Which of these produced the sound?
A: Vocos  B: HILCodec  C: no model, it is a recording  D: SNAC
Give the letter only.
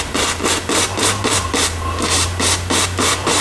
C